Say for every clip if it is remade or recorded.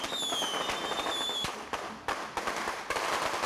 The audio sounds recorded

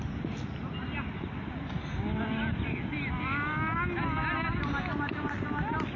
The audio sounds recorded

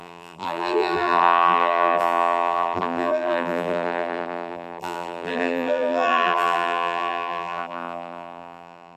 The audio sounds remade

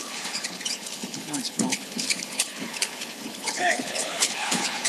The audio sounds remade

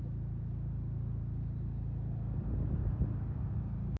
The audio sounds recorded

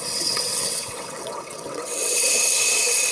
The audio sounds remade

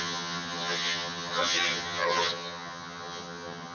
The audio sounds remade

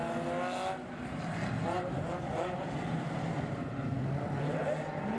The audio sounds recorded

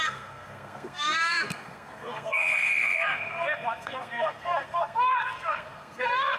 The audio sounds remade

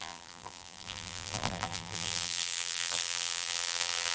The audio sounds remade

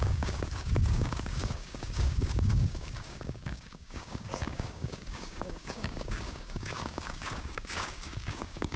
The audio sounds remade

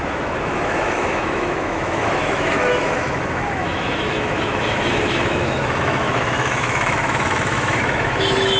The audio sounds remade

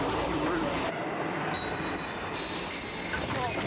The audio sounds recorded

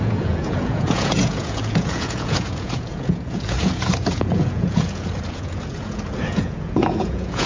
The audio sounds remade